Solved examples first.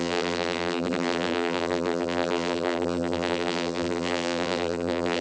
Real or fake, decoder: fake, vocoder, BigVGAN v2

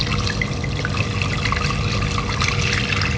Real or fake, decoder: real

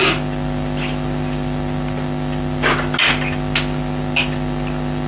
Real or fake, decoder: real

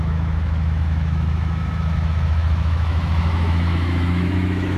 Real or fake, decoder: fake, autoencoder, DAC-VAE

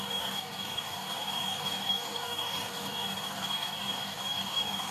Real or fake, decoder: fake, codec, DAC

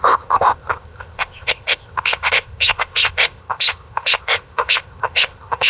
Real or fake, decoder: fake, codec, ZipCodec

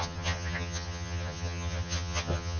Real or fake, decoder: fake, vocoder, HiFi-GAN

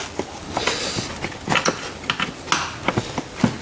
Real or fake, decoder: real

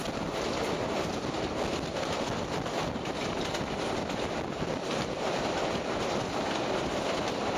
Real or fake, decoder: real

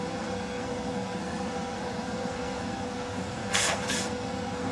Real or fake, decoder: fake, codec, SNAC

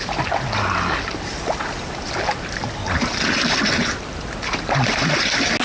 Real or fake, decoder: real